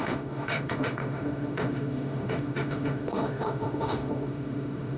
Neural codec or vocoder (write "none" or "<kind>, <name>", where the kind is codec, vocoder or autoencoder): autoencoder, DAC-VAE